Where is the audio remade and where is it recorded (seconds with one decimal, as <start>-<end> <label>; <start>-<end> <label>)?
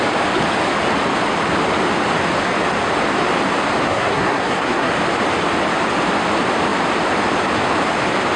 0.0-3.8 recorded; 3.8-4.9 remade; 4.9-8.4 recorded